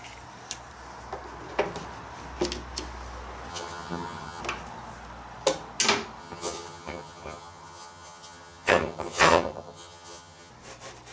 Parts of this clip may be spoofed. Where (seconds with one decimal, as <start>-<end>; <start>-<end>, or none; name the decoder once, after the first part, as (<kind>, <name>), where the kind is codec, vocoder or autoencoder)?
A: 3.5-4.4 (vocoder, HiFi-GAN); 6.2-10.5